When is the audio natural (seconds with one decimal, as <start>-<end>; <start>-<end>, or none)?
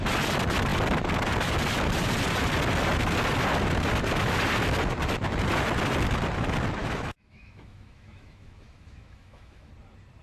0.0-6.8; 9.7-10.2